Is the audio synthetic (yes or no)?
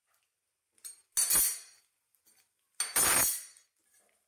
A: no